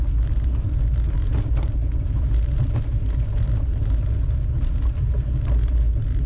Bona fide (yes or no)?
yes